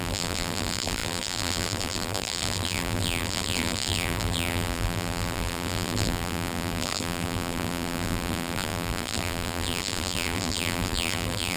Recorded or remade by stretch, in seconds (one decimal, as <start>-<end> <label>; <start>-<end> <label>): 0.0-11.6 remade

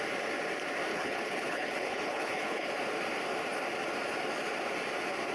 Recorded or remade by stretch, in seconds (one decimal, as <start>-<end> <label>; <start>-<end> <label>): 0.0-0.9 recorded; 0.9-2.7 remade; 2.7-5.3 recorded

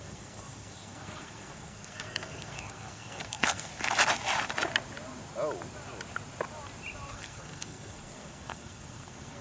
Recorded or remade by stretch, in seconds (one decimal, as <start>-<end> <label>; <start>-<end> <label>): 0.0-3.7 remade; 3.7-7.1 recorded; 7.1-9.4 remade

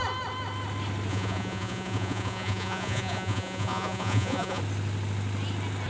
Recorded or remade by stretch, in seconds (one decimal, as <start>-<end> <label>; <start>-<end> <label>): 0.0-1.1 recorded; 1.1-4.6 remade; 4.6-5.9 recorded

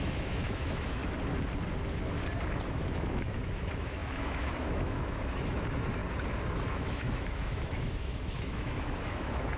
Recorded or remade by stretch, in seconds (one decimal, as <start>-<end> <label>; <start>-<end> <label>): 0.0-1.0 remade; 1.0-2.7 recorded; 2.7-6.0 remade; 6.0-6.7 recorded; 6.7-9.6 remade